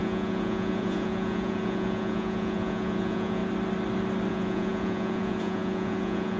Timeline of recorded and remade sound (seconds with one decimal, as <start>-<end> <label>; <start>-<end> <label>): 0.0-3.4 remade; 3.4-4.3 recorded; 4.3-6.4 remade